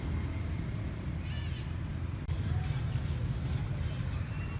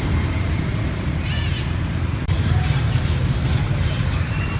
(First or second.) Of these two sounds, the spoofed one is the second